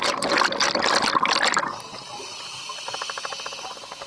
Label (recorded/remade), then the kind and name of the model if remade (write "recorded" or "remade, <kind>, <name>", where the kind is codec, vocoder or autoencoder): recorded